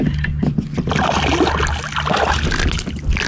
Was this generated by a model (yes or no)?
no